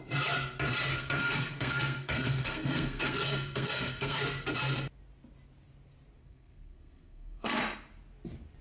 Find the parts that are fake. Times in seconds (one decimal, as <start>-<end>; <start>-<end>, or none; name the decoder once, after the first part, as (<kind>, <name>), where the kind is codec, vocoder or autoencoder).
0.9-4.2 (codec, SNAC); 6.2-7.6